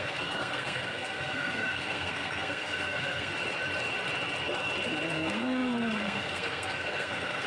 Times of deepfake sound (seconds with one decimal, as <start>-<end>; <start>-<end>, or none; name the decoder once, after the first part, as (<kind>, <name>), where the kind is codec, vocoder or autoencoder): 0.0-3.3 (codec, SNAC); 5.1-7.5